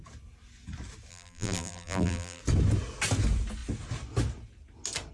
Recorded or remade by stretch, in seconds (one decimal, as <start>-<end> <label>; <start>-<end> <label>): 0.0-1.1 recorded; 1.1-2.4 remade; 2.4-5.1 recorded

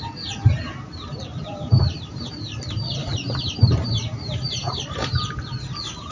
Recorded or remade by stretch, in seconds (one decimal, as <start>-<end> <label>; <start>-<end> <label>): 0.0-1.3 recorded; 1.3-2.3 remade; 2.3-3.0 recorded; 3.0-5.1 remade; 5.1-6.1 recorded